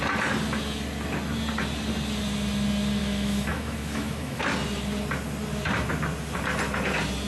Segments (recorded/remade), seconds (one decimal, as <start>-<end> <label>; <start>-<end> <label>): 0.0-3.0 recorded; 3.0-4.4 remade; 4.4-7.3 recorded